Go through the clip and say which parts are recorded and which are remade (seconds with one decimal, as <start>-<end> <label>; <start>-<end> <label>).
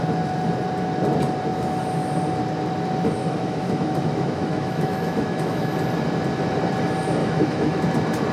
0.0-3.2 recorded; 3.2-5.7 remade; 5.7-7.2 recorded; 7.2-7.8 remade; 7.8-8.3 recorded